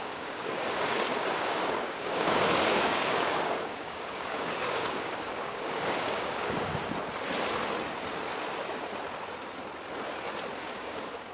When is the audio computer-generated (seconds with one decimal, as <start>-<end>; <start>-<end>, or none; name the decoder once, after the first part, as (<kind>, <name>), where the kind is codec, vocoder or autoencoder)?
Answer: 0.0-6.7 (codec, DAC); 10.7-11.3